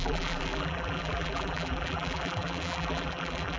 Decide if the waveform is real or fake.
fake